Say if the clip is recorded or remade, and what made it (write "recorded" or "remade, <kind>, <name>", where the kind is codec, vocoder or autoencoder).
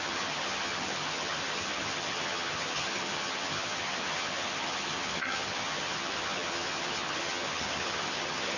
remade, vocoder, HiFi-GAN